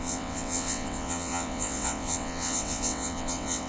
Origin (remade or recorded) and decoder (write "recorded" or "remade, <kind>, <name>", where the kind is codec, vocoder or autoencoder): remade, vocoder, WaveNeXt